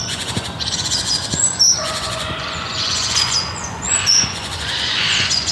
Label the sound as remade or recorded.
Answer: remade